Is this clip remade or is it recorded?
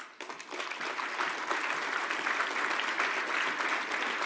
recorded